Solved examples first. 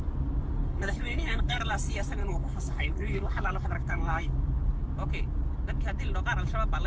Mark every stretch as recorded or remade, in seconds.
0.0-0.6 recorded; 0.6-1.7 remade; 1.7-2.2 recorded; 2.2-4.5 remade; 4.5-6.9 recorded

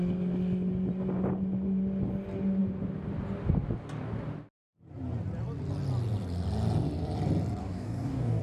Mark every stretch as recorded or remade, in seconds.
0.0-7.6 recorded; 7.6-8.4 remade